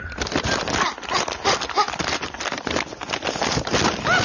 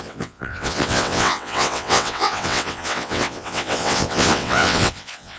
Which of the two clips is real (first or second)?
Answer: first